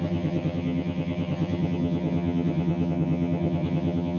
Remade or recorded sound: remade